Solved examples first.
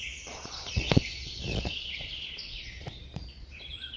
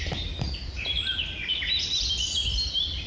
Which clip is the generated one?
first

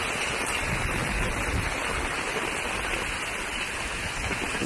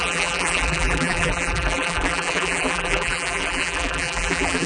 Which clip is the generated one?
second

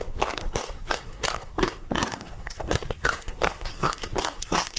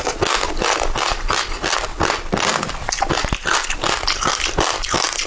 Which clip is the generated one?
first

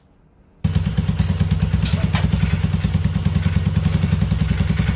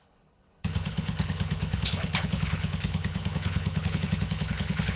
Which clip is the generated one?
second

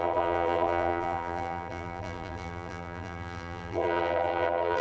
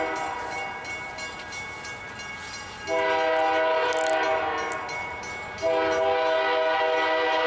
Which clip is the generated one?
first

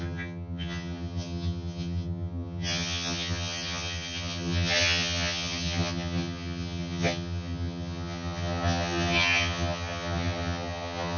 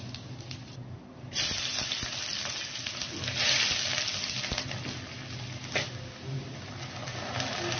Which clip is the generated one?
first